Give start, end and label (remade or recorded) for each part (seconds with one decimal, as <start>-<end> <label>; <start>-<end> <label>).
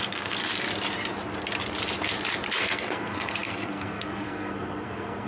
0.0-0.4 remade; 0.4-2.6 recorded; 2.6-5.3 remade